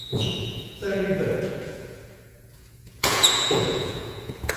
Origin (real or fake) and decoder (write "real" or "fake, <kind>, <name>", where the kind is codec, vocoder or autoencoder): fake, vocoder, Vocos